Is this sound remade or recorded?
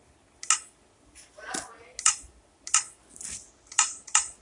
recorded